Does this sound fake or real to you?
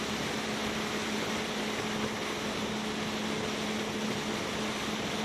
fake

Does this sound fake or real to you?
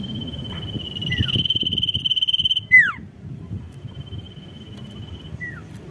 fake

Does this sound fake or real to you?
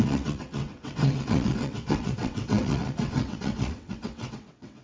fake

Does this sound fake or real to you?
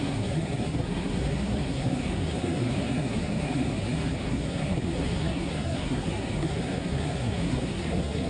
fake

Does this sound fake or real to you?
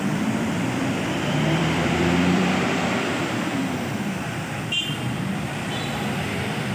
fake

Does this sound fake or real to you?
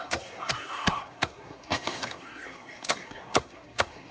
fake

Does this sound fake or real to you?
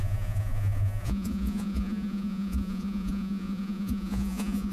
fake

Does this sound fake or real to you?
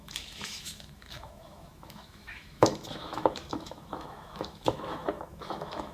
fake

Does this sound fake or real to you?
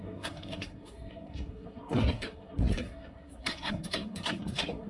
fake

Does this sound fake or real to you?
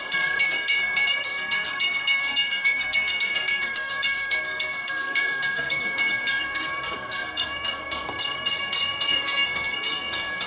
fake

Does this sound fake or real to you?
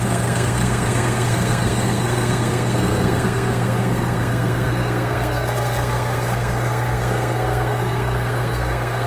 fake